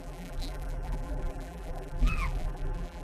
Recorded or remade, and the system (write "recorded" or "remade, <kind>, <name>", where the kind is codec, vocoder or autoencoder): remade, vocoder, BigVGAN v2